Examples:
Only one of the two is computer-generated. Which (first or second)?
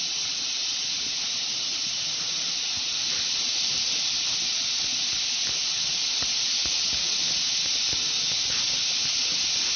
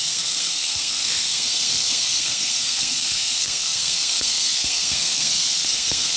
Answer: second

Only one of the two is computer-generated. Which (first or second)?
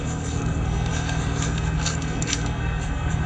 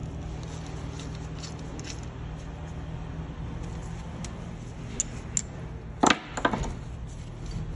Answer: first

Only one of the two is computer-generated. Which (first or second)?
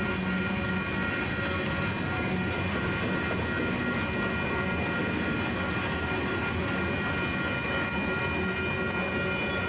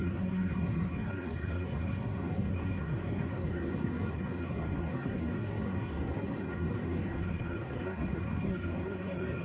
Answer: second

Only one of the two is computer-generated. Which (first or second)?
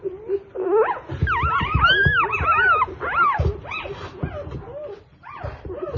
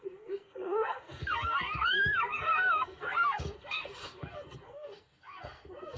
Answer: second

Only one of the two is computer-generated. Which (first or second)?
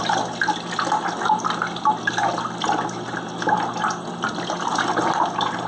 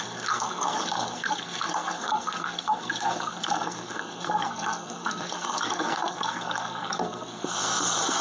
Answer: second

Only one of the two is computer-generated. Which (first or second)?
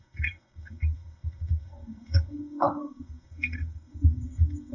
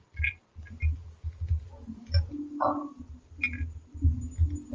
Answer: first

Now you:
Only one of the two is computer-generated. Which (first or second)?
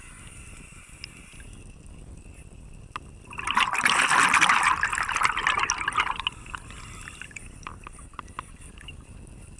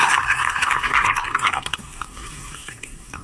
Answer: second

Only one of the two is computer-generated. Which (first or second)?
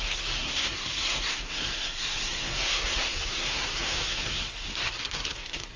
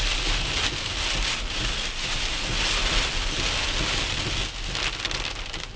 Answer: first